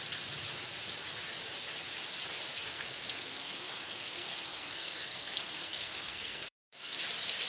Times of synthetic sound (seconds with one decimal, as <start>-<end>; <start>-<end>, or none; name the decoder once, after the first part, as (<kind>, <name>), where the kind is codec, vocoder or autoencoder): 2.5-7.0 (codec, SNAC)